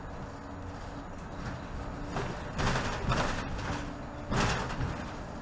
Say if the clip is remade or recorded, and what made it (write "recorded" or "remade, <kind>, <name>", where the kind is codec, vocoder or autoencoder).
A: recorded